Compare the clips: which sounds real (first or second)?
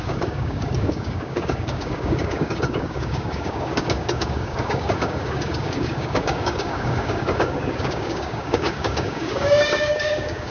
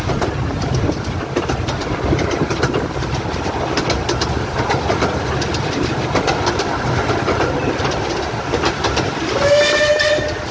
second